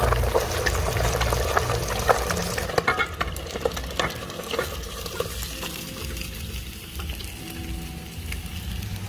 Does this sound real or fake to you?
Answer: real